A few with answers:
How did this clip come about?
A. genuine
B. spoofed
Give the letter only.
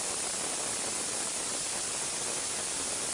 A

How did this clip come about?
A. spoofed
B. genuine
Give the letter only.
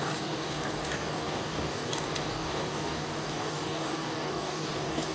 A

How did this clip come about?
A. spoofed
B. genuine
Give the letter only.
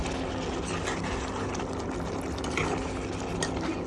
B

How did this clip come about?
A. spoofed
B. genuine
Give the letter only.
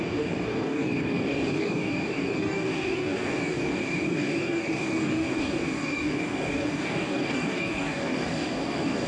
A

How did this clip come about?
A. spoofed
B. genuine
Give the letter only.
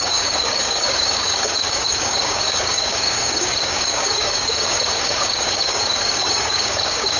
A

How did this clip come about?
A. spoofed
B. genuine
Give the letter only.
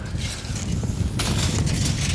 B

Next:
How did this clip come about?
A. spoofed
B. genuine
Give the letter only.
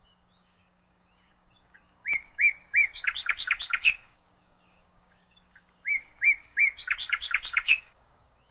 A